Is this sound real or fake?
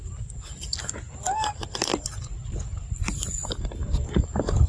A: real